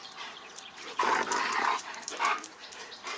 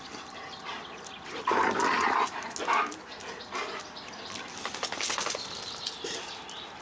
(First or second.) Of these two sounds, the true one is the second